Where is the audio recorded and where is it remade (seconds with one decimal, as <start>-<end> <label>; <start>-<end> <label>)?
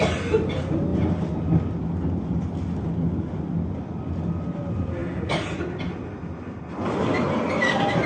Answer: 0.0-8.1 recorded